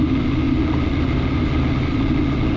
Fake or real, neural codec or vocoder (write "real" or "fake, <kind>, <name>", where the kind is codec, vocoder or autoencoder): real